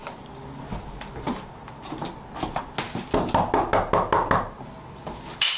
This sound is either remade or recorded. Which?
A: recorded